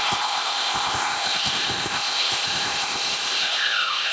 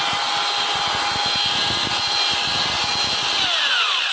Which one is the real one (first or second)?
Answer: second